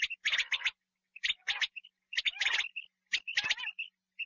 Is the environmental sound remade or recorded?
recorded